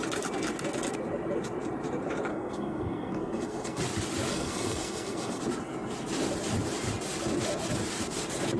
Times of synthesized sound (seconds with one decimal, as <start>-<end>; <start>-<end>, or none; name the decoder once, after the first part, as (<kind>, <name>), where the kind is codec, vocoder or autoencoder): 2.3-3.8 (codec, SNAC); 4.3-5.4